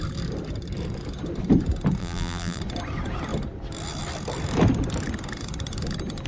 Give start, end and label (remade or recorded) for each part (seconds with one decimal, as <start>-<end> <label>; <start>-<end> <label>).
0.0-2.0 recorded; 2.0-2.6 remade; 2.6-6.3 recorded